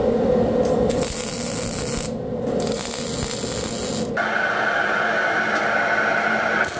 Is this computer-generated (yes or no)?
no